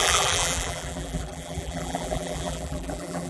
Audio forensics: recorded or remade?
remade